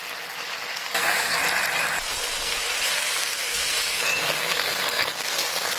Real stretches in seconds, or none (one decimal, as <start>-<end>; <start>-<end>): 0.0-0.7; 1.4-2.1

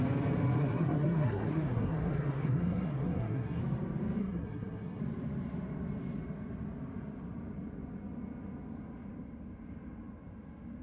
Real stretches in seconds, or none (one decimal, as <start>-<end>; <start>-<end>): 0.0-0.6; 3.6-4.2; 5.0-10.8

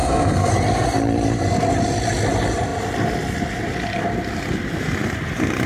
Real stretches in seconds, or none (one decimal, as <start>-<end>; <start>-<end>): 0.5-5.7